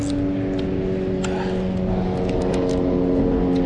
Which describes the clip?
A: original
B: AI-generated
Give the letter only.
A